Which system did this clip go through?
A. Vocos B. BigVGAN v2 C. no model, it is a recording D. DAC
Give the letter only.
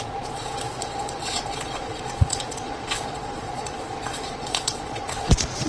A